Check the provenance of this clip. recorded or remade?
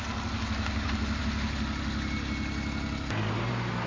recorded